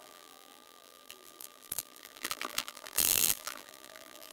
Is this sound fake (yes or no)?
yes